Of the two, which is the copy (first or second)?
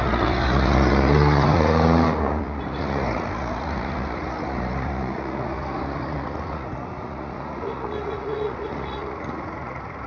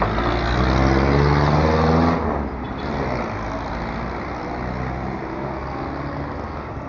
first